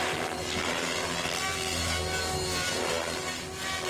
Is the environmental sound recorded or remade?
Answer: recorded